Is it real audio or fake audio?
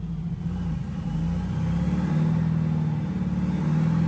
real